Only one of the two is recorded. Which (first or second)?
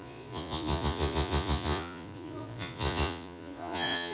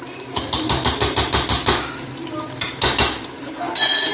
second